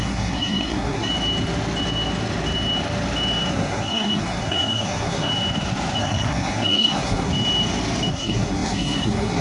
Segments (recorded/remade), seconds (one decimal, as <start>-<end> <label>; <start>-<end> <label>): 0.0-1.1 remade; 1.1-3.5 recorded; 3.5-5.3 remade; 5.3-6.0 recorded; 6.0-7.3 remade; 7.3-8.1 recorded; 8.1-9.4 remade